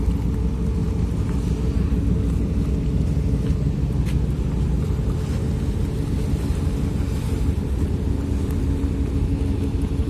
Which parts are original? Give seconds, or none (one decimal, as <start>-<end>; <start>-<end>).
0.0-10.1